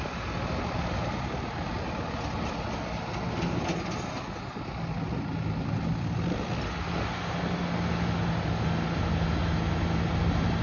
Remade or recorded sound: recorded